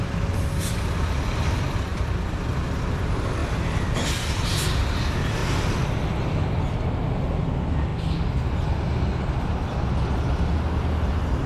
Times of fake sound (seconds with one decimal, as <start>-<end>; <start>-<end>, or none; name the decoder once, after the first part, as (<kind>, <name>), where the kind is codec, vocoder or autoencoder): 5.4-6.3 (vocoder, BigVGAN v2)